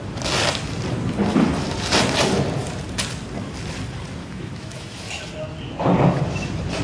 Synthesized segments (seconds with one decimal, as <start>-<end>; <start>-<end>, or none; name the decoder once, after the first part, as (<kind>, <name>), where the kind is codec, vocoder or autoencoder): 4.2-5.2 (autoencoder, DAC-VAE)